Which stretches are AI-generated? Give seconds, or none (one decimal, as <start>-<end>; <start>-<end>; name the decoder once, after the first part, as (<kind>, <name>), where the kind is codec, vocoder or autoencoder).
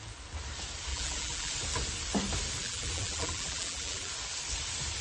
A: 0.9-1.5 (vocoder, BigVGAN v2); 2.6-4.1